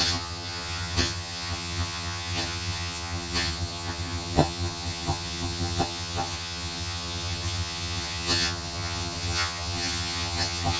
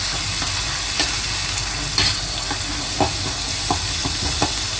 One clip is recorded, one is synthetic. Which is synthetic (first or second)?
first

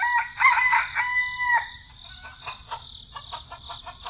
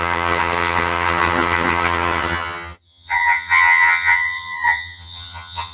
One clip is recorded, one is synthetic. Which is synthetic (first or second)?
second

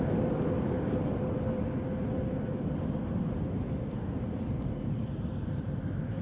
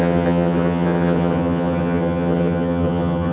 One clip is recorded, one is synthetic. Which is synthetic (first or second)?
second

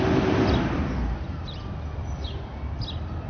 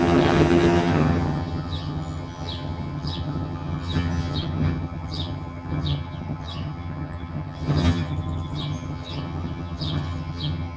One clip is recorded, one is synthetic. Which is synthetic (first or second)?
second